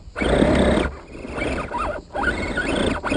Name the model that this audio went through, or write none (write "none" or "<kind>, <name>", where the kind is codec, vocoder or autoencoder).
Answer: none